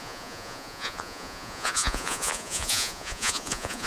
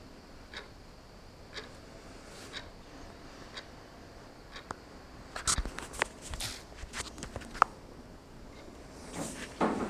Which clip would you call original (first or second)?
second